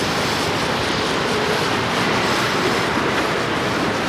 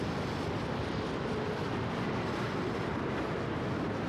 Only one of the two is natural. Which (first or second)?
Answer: second